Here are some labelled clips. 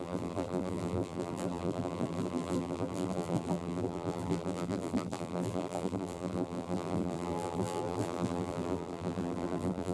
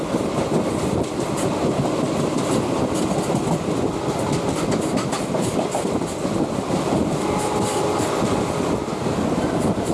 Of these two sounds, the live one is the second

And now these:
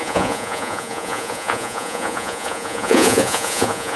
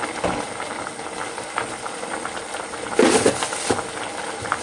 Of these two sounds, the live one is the second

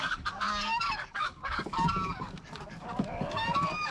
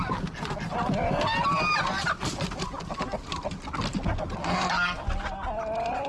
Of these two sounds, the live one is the second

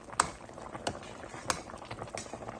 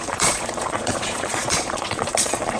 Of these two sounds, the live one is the first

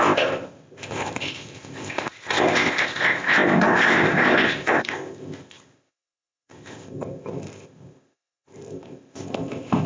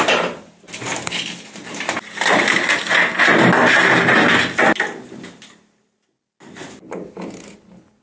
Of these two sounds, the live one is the second